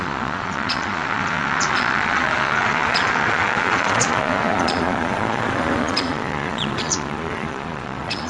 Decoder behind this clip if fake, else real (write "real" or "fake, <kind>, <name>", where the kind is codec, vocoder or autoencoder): fake, vocoder, Vocos